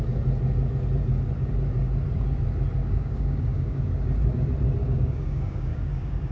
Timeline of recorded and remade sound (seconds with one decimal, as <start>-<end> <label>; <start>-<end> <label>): 0.0-2.8 recorded; 2.8-3.8 remade; 3.8-4.8 recorded; 4.8-6.3 remade